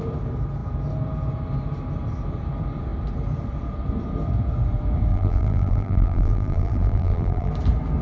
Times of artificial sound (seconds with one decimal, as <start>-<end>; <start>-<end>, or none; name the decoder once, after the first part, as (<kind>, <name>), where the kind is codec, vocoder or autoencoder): 5.1-7.5 (vocoder, BigVGAN v2)